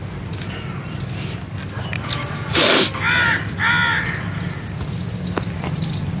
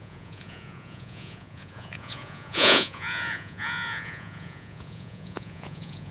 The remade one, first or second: second